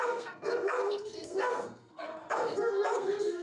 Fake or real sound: fake